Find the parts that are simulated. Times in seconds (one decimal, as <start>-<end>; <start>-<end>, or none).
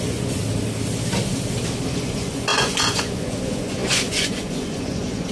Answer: 0.0-0.4; 1.9-5.3